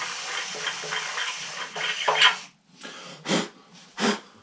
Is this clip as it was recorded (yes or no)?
yes